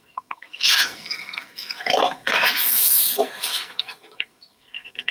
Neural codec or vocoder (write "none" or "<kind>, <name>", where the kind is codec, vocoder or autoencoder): codec, SNAC